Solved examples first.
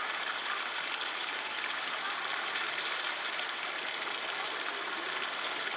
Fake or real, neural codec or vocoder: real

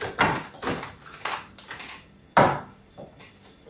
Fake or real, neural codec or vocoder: real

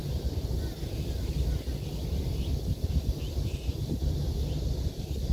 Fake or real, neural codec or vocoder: real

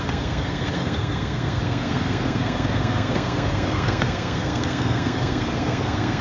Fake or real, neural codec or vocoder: fake, codec, SNAC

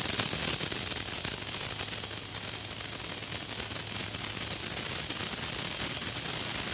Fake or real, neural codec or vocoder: real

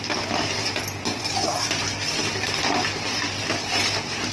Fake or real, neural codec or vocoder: real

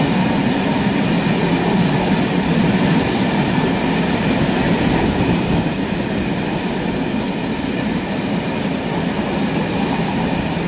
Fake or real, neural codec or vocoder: real